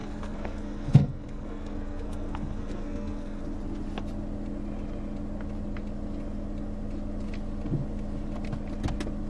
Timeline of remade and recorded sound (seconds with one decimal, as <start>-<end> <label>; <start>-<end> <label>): 0.0-3.4 remade; 3.4-9.3 recorded